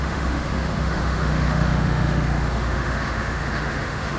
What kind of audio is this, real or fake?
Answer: fake